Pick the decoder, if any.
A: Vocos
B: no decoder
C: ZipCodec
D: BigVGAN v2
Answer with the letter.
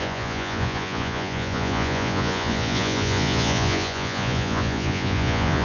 A